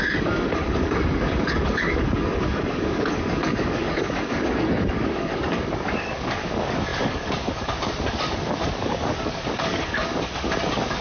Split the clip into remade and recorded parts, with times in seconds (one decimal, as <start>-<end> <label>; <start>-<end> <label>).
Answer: 0.0-11.0 remade